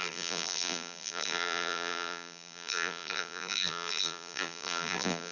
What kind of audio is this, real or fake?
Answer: fake